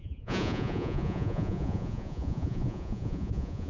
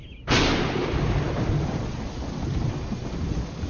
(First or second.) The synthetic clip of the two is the first